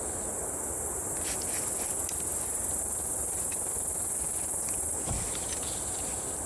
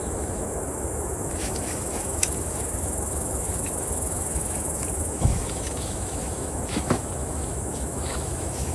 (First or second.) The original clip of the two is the first